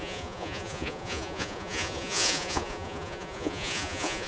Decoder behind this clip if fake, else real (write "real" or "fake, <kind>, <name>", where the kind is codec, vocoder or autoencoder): fake, vocoder, Vocos